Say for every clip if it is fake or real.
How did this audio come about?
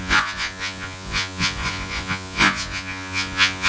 fake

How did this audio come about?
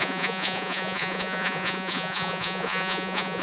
fake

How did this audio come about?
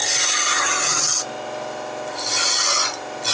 real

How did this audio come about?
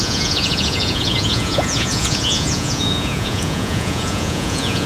fake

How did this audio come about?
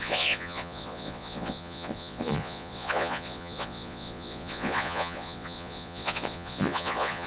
fake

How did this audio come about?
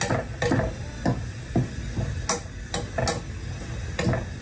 real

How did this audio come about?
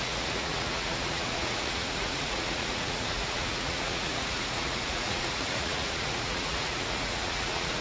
fake